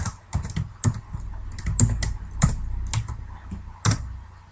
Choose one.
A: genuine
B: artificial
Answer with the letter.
A